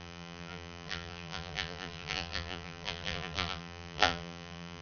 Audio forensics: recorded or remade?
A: remade